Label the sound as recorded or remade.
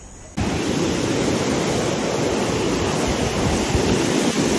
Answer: recorded